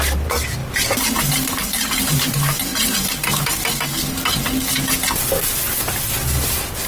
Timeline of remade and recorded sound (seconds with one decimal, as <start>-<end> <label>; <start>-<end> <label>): 0.0-0.6 remade; 0.6-2.1 recorded; 2.1-2.7 remade; 2.7-6.9 recorded